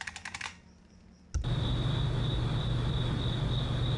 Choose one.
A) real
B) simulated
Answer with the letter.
A